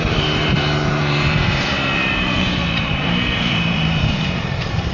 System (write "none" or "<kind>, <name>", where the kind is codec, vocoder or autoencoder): vocoder, BigVGAN v2